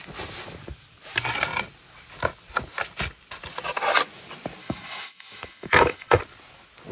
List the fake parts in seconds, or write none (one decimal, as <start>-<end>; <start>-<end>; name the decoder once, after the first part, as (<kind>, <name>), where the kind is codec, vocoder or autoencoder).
4.6-6.2 (autoencoder, DAC-VAE)